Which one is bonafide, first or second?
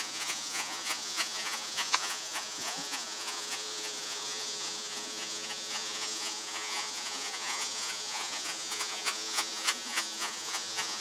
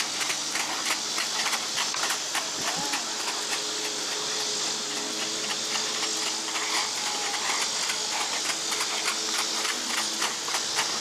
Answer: second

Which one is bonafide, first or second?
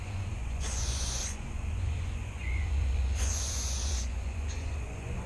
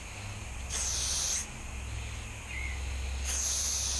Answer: second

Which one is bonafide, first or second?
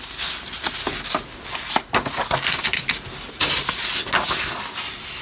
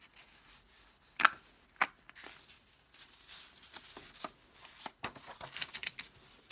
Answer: first